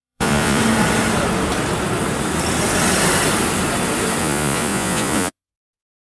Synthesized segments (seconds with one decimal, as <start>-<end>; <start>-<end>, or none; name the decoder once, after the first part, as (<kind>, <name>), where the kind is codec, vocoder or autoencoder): 0.0-0.6 (vocoder, Vocos); 4.2-6.0

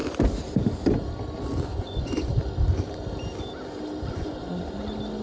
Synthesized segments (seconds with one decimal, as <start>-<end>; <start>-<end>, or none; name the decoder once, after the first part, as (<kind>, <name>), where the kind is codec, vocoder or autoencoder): 1.7-2.3 (vocoder, Vocos); 4.1-4.6

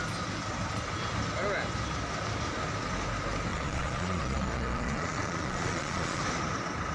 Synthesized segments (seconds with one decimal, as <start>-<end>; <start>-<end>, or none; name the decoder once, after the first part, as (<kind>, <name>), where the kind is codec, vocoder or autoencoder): 3.5-6.2 (vocoder, Vocos)